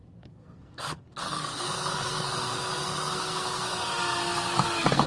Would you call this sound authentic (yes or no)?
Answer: no